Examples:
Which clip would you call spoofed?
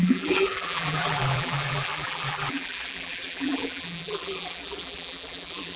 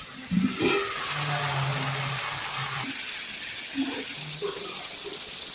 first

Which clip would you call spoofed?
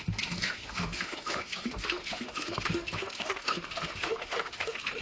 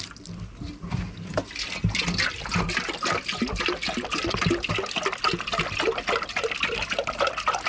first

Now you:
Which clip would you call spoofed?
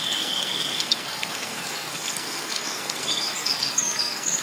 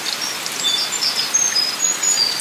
first